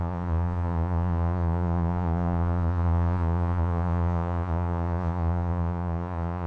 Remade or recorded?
remade